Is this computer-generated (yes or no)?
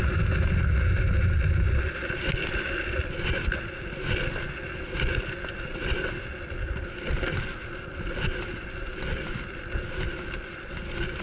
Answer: no